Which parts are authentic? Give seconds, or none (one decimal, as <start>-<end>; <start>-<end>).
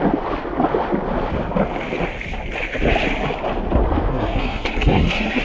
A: 0.0-4.1